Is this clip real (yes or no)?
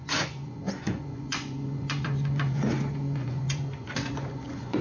no